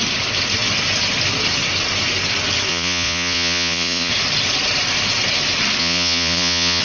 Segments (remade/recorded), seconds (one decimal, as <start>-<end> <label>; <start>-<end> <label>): 0.0-2.7 recorded; 2.7-4.1 remade; 4.1-5.8 recorded; 5.8-6.8 remade